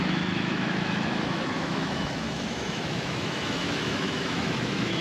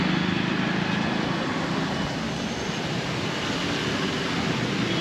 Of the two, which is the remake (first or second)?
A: first